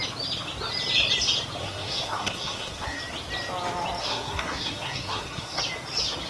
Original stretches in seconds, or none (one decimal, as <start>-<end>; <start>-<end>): 0.0-1.6; 3.0-4.0; 5.6-6.3